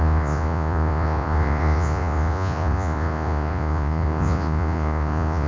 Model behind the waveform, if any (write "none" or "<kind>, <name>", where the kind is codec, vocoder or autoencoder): vocoder, Vocos